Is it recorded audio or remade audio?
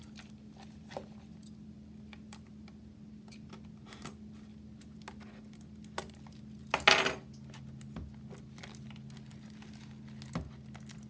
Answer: recorded